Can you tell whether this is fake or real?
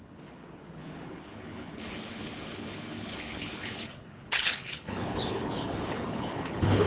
fake